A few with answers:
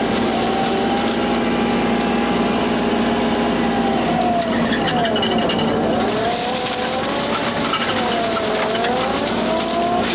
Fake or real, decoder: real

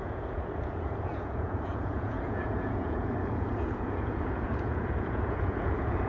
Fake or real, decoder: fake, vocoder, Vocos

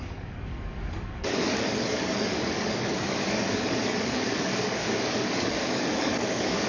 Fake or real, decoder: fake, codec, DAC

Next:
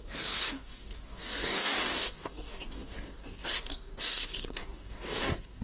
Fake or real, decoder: fake, codec, DAC